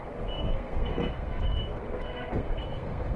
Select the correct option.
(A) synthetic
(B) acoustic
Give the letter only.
A